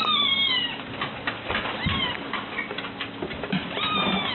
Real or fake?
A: real